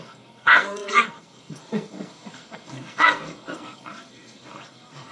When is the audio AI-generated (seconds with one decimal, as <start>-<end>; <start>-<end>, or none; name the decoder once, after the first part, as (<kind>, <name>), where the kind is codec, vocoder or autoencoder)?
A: 0.0-5.1 (codec, SNAC)